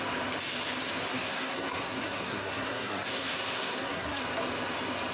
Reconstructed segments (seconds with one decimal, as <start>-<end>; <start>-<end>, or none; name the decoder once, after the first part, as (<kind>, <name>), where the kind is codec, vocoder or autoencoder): 1.1-4.2 (codec, SNAC)